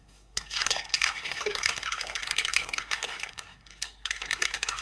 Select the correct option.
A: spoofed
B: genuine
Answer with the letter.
A